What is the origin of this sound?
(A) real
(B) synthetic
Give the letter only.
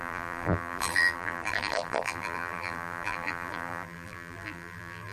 B